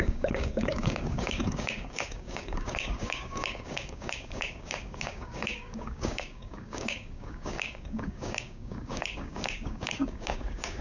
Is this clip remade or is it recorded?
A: remade